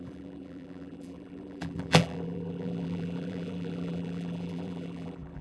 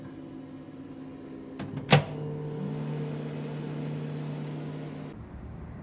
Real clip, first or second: second